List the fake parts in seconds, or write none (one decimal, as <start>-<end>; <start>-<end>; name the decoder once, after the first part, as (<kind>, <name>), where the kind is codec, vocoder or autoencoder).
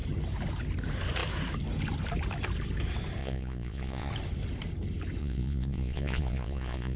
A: 3.2-4.1 (vocoder, Vocos); 5.2-7.0